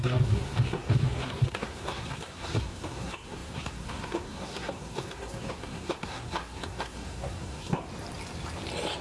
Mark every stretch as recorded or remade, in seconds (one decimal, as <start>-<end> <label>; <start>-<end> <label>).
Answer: 0.0-7.8 remade; 7.8-9.0 recorded